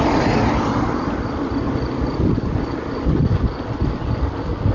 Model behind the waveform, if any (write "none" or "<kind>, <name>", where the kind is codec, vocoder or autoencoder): none